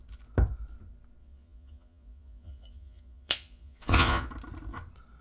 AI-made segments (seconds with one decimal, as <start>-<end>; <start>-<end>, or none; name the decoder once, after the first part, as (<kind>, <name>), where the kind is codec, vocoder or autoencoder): 1.2-4.3 (vocoder, Vocos)